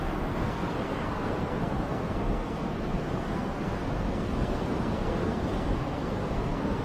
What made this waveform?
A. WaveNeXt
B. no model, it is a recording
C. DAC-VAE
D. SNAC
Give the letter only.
D